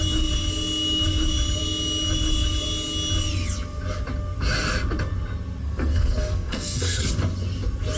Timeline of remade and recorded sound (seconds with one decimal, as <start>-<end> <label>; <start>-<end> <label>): 0.0-5.6 recorded; 5.6-7.1 remade; 7.1-8.0 recorded